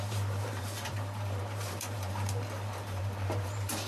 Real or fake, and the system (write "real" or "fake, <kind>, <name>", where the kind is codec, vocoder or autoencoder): fake, vocoder, BigVGAN v2